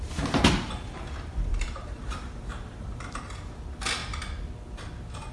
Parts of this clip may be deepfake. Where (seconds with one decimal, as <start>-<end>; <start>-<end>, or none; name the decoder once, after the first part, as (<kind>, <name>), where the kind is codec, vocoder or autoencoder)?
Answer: 1.5-3.2 (vocoder, BigVGAN v2)